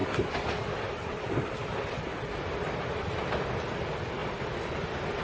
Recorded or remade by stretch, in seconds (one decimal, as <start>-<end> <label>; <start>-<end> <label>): 0.0-5.2 recorded